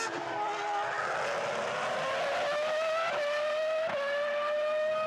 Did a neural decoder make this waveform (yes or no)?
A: no